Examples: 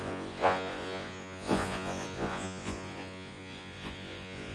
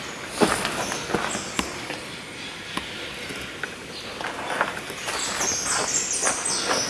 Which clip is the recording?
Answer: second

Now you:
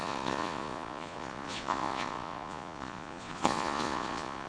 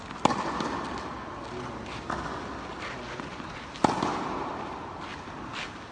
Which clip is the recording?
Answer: second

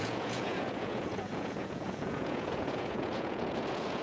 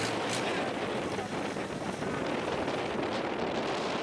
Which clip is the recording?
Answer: second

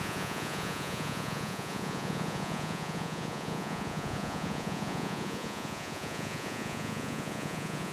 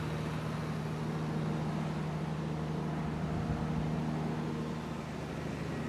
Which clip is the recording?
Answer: second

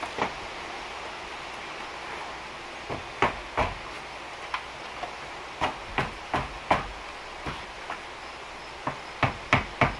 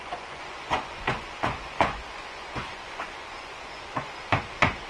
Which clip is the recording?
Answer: first